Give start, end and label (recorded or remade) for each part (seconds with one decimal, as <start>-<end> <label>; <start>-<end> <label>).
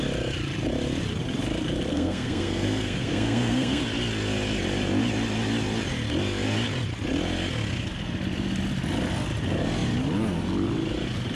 0.0-1.9 recorded; 1.9-3.8 remade; 3.8-11.3 recorded